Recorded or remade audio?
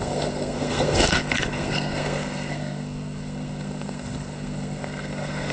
remade